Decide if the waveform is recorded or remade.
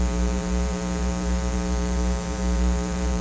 remade